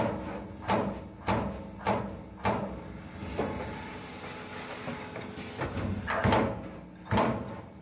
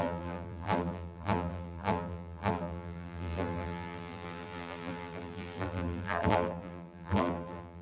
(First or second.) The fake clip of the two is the second